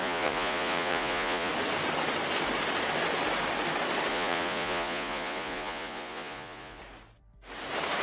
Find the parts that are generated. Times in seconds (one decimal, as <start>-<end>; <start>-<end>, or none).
0.0-1.5; 4.1-6.8